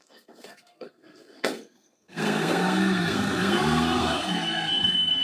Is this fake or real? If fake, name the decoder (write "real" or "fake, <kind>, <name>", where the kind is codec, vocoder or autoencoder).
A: fake, codec, SNAC